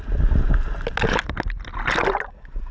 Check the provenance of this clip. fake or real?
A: real